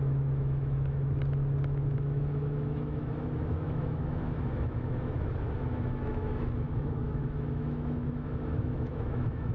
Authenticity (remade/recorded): remade